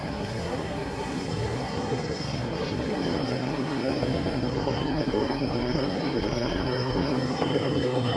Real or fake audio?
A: fake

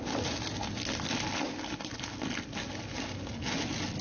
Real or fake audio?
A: real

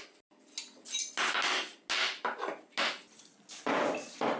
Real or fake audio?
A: real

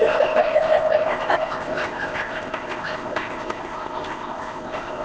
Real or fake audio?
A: fake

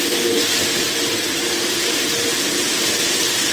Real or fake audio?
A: real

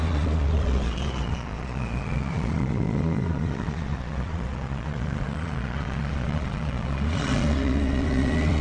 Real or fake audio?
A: fake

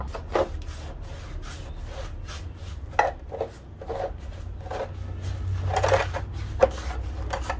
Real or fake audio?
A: real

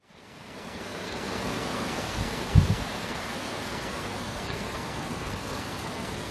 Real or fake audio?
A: fake